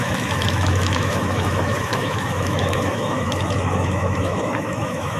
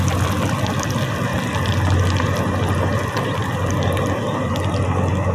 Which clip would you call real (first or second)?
second